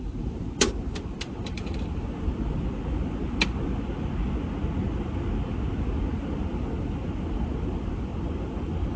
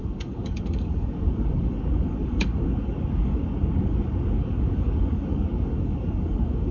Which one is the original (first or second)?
first